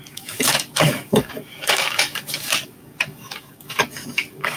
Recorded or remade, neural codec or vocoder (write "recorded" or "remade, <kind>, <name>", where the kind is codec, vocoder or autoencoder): remade, codec, DAC